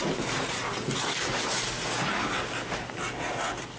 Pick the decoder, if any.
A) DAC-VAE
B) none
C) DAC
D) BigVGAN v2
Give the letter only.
B